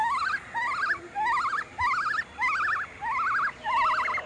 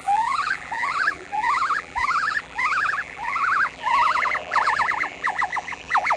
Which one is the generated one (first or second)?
second